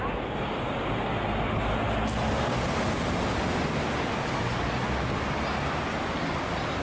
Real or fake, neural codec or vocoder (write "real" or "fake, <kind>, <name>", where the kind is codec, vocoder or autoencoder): real